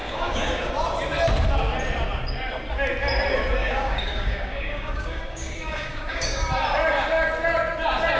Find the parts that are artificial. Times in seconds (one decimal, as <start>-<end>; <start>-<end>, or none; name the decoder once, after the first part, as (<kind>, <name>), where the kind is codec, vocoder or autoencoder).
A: 0.0-0.7 (codec, DAC); 3.6-6.5